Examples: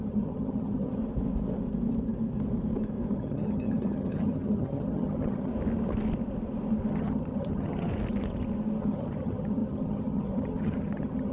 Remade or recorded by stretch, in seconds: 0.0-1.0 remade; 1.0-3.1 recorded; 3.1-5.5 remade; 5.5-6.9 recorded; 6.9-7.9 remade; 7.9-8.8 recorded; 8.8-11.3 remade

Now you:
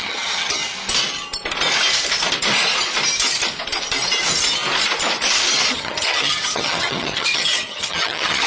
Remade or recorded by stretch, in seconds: 0.0-0.6 remade; 0.6-5.7 recorded; 5.7-8.5 remade

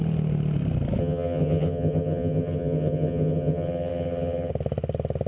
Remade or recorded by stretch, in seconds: 0.0-1.0 recorded; 1.0-4.5 remade; 4.5-5.3 recorded

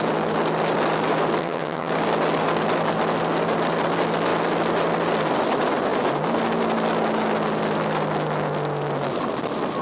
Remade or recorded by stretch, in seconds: 0.0-1.4 recorded; 1.4-1.9 remade; 1.9-9.8 recorded

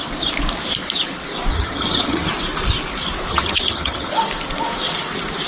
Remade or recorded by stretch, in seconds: 0.0-1.5 recorded; 1.5-2.3 remade; 2.3-3.3 recorded; 3.3-4.1 remade; 4.1-5.5 recorded

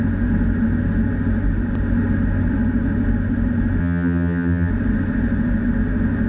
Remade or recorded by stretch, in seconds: 0.0-3.8 recorded; 3.8-4.7 remade; 4.7-6.3 recorded

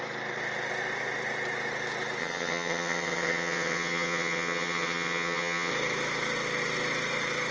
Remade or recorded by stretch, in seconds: 0.0-2.2 recorded; 2.2-5.7 remade; 5.7-7.5 recorded

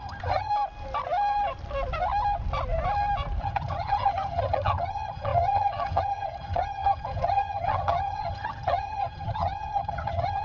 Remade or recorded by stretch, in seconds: 0.0-0.5 remade; 0.5-3.4 recorded; 3.4-10.4 remade